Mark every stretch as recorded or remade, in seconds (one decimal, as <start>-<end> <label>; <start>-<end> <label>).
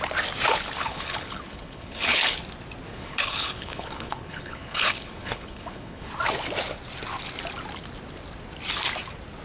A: 0.0-0.8 recorded; 0.8-2.4 remade; 2.4-2.9 recorded; 2.9-6.1 remade; 6.1-9.4 recorded